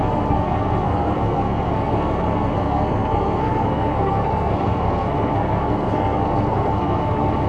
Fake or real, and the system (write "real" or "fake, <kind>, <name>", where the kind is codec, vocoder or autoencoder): fake, codec, SNAC